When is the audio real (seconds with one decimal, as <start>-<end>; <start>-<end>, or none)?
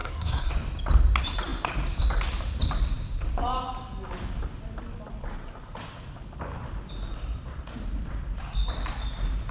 0.5-9.5